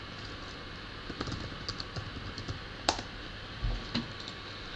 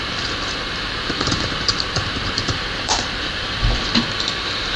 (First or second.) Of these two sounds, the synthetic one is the second